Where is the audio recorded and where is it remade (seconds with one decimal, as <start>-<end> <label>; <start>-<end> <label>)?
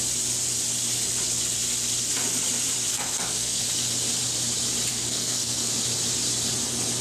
0.0-2.9 recorded; 2.9-3.6 remade; 3.6-4.9 recorded; 4.9-5.7 remade; 5.7-7.0 recorded